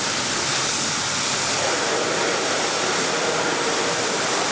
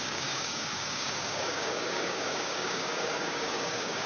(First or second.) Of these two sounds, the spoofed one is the second